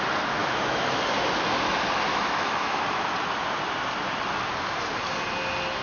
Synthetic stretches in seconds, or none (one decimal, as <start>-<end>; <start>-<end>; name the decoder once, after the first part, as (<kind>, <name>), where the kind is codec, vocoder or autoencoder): 0.4-1.0 (autoencoder, DAC-VAE); 2.1-2.8